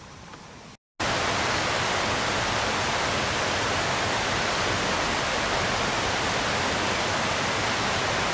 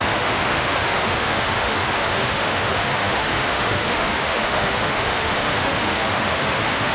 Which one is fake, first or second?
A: second